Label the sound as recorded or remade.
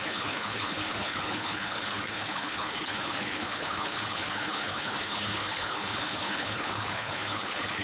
remade